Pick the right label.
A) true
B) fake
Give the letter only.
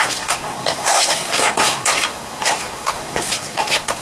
B